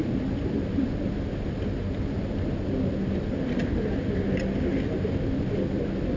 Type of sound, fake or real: real